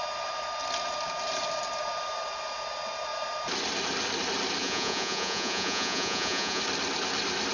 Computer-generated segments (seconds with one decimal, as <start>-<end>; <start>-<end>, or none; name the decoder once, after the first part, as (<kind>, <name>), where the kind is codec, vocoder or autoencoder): 4.6-6.6 (vocoder, Vocos)